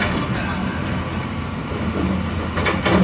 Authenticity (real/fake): real